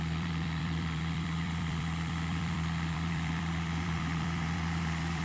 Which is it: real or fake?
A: fake